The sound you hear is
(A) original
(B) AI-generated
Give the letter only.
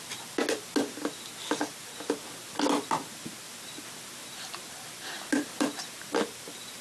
A